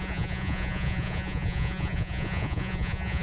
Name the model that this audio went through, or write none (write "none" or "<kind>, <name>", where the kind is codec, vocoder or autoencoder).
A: vocoder, Vocos